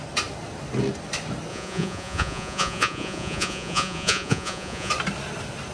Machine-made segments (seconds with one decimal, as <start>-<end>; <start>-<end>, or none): 1.5-4.9